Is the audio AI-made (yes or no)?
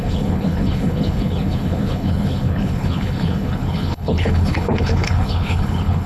yes